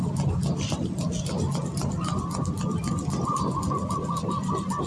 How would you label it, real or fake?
real